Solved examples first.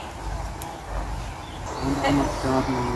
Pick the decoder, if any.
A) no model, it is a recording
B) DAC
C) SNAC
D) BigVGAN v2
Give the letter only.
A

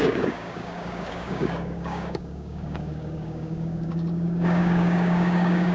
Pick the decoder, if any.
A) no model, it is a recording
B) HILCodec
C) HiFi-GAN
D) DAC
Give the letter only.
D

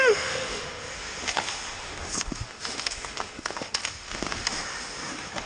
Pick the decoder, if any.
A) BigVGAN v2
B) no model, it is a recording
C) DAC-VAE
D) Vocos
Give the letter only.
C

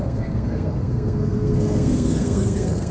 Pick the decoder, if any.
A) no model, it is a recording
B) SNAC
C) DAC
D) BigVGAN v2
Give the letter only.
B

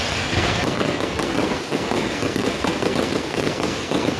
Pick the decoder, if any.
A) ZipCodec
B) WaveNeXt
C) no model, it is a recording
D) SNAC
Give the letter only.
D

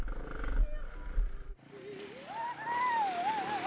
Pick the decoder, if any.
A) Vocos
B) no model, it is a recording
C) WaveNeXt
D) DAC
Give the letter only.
B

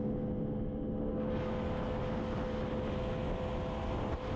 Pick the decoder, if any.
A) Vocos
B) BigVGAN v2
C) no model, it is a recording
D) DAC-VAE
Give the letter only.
C